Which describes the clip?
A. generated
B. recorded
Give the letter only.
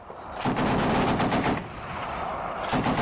B